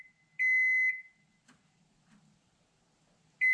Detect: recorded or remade recorded